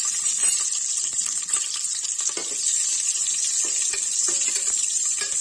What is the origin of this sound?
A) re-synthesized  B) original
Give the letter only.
B